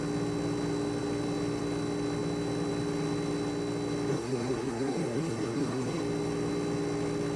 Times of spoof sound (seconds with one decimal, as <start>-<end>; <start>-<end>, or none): 4.1-6.0